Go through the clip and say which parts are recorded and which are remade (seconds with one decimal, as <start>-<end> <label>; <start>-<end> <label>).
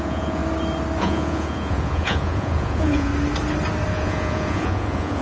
0.0-0.4 remade; 0.4-1.0 recorded; 1.0-3.1 remade; 3.1-3.9 recorded; 3.9-5.2 remade